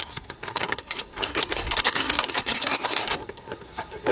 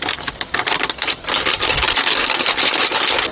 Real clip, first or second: second